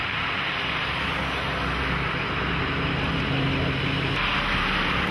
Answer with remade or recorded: recorded